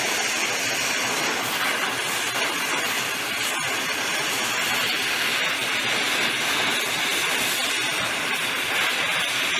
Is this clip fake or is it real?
real